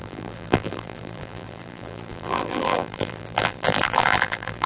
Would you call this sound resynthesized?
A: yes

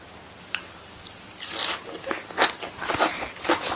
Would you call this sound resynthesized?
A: no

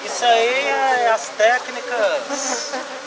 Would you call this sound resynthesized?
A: no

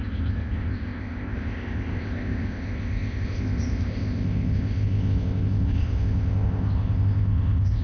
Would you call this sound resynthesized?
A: yes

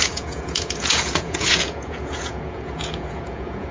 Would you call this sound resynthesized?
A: yes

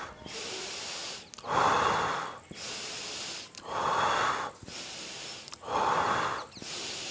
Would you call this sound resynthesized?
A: no